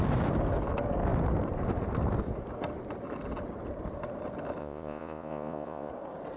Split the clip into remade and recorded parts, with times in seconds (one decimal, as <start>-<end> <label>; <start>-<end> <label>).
0.0-4.6 recorded; 4.6-5.9 remade; 5.9-6.4 recorded